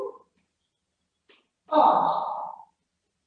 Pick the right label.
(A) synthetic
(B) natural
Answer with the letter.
B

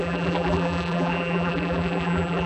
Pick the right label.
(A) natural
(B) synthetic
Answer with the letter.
B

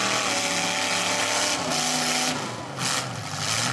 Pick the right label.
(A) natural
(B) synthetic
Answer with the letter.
A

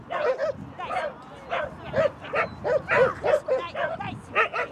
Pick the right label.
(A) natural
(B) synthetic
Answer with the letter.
A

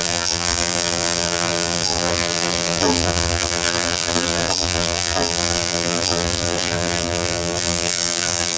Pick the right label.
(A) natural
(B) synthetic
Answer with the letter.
B